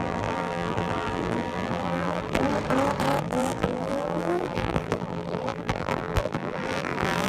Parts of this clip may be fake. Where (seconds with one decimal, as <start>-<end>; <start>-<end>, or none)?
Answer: 0.0-2.5; 3.2-7.3